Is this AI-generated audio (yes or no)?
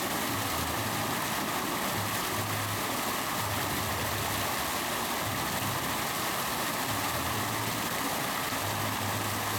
no